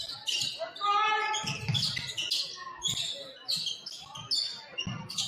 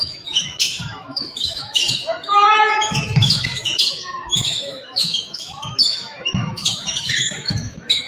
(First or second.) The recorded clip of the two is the first